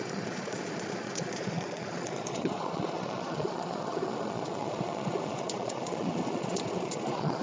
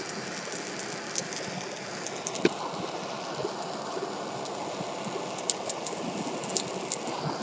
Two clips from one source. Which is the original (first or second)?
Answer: second